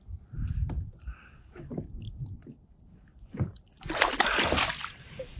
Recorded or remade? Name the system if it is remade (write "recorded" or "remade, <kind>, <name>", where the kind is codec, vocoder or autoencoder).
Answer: recorded